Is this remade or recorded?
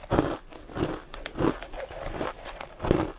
recorded